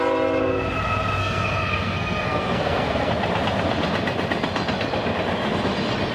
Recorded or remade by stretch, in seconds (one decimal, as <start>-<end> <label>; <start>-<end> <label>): 0.0-1.2 recorded; 1.2-3.1 remade; 3.1-6.1 recorded